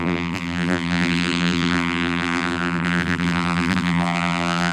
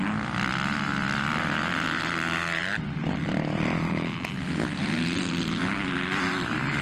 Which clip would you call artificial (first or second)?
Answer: first